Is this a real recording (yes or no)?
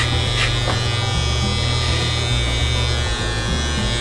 yes